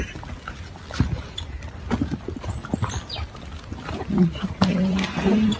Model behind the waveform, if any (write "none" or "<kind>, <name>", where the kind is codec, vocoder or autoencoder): vocoder, BigVGAN v2